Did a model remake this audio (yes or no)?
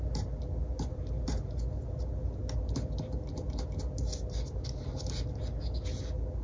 no